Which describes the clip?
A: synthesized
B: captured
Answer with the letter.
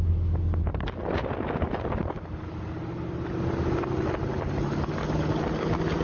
B